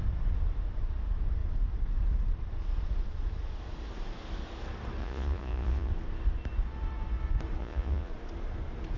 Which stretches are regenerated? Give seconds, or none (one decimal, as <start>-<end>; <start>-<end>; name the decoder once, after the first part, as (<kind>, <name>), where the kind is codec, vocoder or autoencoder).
5.0-5.9 (vocoder, Vocos); 7.6-8.1